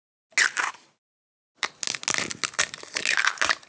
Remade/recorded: recorded